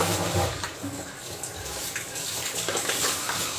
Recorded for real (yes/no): no